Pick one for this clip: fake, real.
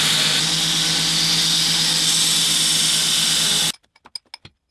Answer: real